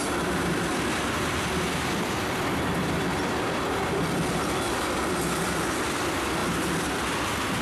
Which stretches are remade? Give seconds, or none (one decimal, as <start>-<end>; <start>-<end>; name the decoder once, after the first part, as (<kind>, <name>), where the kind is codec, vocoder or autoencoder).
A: none